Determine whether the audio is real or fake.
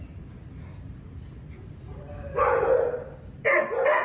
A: real